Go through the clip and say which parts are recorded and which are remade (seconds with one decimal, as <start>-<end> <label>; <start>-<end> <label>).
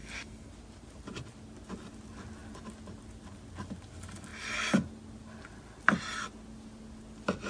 0.0-0.5 remade; 0.5-7.5 recorded